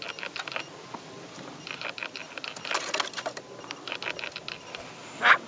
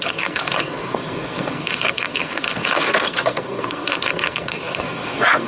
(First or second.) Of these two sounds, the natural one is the first